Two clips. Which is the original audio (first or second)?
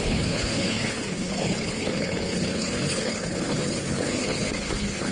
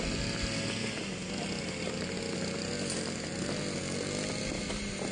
second